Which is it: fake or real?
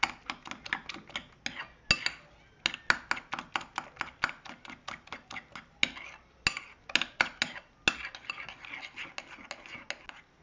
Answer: real